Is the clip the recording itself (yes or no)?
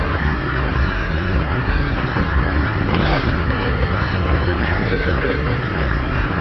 no